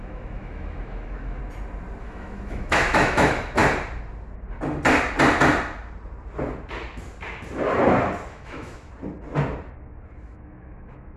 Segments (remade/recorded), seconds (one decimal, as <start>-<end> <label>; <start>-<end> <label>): 0.0-1.4 remade; 1.4-2.0 recorded; 2.0-3.6 remade; 3.6-8.3 recorded; 8.3-8.9 remade; 8.9-10.2 recorded; 10.2-11.2 remade